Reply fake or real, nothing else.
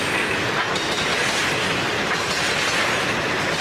real